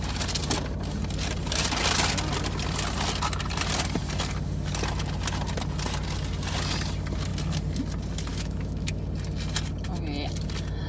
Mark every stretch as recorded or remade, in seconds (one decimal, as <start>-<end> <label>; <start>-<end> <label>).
0.0-8.3 recorded; 8.3-9.0 remade; 9.0-10.9 recorded